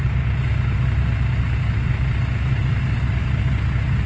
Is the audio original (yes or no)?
yes